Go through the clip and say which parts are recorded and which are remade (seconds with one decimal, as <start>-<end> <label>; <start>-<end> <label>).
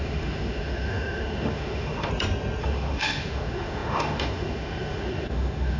0.0-2.1 remade; 2.1-2.6 recorded; 2.6-5.8 remade